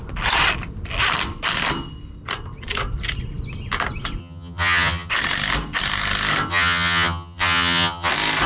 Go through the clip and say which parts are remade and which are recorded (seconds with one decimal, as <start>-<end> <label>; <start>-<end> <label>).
0.0-4.2 recorded; 4.2-5.1 remade; 5.1-6.5 recorded; 6.5-8.1 remade; 8.1-8.5 recorded